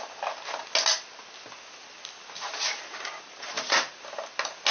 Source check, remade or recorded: recorded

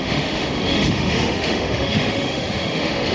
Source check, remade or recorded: remade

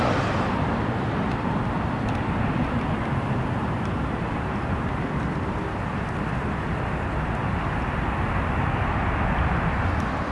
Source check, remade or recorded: recorded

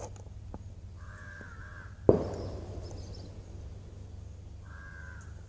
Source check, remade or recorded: recorded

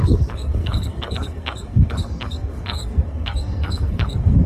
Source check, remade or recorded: remade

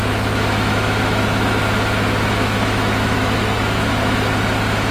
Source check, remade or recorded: remade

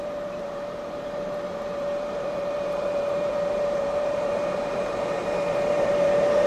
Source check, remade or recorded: remade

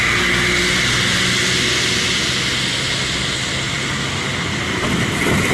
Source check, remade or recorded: recorded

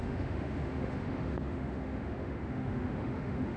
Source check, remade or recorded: remade